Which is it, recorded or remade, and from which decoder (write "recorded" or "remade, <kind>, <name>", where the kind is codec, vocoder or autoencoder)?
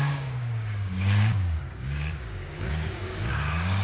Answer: remade, codec, DAC